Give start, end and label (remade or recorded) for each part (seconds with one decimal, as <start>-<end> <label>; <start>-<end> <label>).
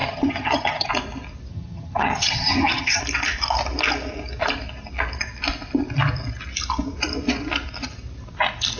0.0-0.9 remade; 0.9-1.5 recorded; 1.5-3.0 remade; 3.0-8.8 recorded